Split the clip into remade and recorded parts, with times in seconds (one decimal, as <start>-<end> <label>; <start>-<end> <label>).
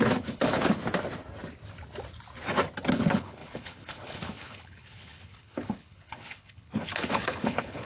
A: 0.0-0.8 remade; 0.8-2.9 recorded; 2.9-7.9 remade